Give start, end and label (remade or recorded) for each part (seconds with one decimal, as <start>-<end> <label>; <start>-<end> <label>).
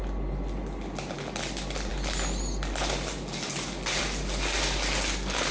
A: 0.0-5.5 recorded